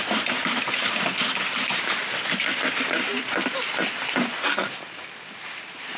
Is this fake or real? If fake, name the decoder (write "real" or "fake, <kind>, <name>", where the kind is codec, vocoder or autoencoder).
fake, vocoder, BigVGAN v2